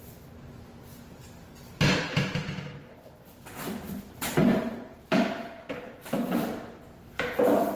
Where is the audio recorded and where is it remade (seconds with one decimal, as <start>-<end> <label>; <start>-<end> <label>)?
0.0-2.4 recorded; 2.4-3.5 remade; 3.5-4.4 recorded; 4.4-5.0 remade; 5.0-7.8 recorded